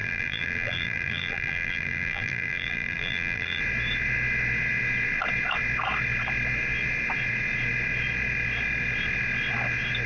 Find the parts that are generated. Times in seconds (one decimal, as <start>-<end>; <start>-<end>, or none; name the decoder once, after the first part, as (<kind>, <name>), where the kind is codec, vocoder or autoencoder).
0.0-3.6 (vocoder, BigVGAN v2)